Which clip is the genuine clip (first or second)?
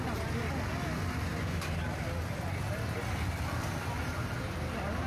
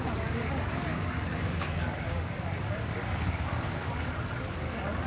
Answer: first